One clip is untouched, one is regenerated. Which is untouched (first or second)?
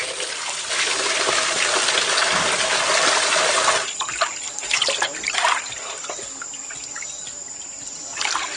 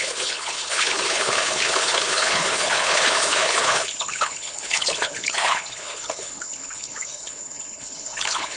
first